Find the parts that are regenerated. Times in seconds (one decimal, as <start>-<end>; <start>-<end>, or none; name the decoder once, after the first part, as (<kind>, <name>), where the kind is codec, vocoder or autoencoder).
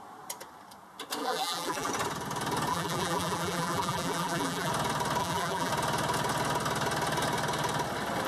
1.2-1.9 (vocoder, BigVGAN v2); 2.7-4.7; 5.2-5.7